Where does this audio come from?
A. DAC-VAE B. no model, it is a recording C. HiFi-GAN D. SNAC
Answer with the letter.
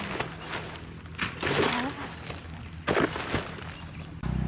B